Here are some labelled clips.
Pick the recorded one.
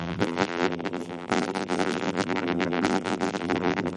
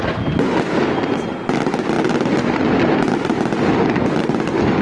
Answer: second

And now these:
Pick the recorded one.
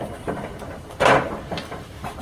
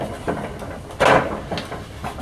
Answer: second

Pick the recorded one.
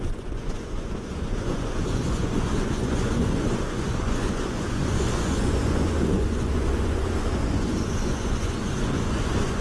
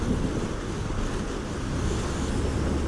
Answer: second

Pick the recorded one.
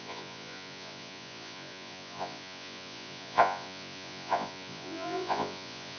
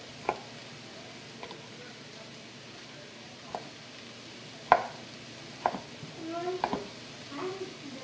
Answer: second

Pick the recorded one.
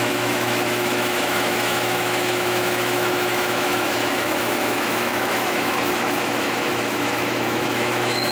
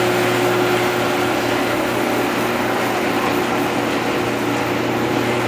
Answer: second